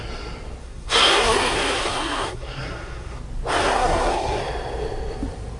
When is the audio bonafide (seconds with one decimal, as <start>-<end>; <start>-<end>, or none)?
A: 0.0-0.6; 3.2-3.6; 4.4-5.6

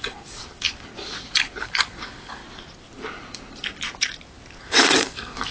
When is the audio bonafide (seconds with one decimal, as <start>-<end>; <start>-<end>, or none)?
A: 0.9-1.6; 2.4-4.6